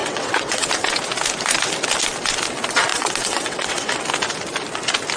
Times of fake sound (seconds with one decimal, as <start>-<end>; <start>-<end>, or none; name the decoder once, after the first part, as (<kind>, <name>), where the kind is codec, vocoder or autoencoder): 0.0-0.7 (vocoder, WaveNeXt); 2.9-4.0